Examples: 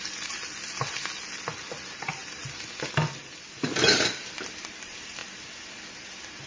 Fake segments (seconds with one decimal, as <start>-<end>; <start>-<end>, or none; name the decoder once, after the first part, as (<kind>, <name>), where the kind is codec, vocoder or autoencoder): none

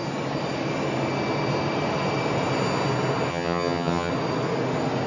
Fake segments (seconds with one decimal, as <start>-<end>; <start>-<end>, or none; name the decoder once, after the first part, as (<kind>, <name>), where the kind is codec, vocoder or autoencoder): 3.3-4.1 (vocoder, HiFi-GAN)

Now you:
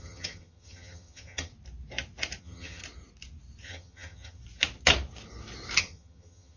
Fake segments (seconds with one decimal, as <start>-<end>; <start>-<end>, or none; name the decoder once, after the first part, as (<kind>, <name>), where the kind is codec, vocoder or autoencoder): 0.0-1.5 (vocoder, HiFi-GAN); 2.4-2.8; 3.6-4.4; 5.8-6.6

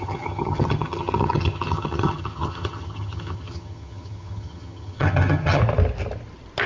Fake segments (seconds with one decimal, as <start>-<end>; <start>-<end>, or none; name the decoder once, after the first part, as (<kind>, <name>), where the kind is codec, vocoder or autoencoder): 0.0-5.6 (vocoder, HiFi-GAN)

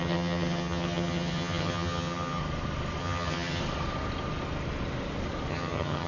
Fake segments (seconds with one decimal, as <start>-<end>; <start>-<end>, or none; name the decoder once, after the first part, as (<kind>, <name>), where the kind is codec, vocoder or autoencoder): 0.0-2.4 (vocoder, HiFi-GAN); 3.0-3.6; 5.5-6.1

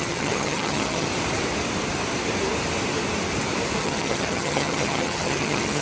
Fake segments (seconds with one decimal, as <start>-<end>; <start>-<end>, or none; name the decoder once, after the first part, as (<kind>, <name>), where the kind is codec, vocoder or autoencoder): 0.0-1.1 (vocoder, HiFi-GAN); 3.8-5.8